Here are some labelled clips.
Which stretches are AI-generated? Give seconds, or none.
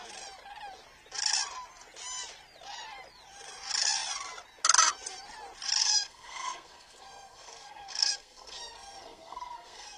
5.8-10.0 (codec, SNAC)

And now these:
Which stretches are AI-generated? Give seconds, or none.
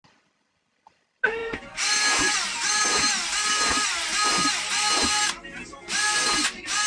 none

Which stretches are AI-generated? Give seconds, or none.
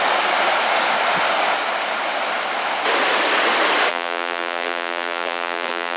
3.9-6.0 (vocoder, BigVGAN v2)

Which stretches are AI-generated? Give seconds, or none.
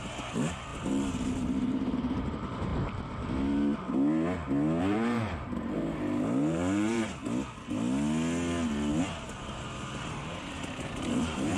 0.0-2.7 (vocoder, BigVGAN v2); 4.8-7.2; 9.0-11.6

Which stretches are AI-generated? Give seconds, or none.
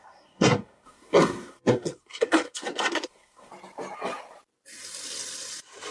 0.0-3.5 (codec, SNAC)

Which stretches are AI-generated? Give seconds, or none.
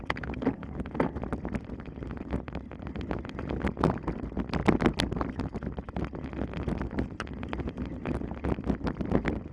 none